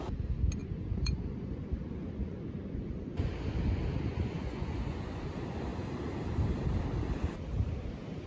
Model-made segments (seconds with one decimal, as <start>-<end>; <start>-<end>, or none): 0.6-3.3; 4.1-5.2